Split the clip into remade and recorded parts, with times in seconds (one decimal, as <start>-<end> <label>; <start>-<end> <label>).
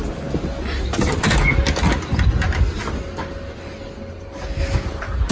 0.0-5.3 recorded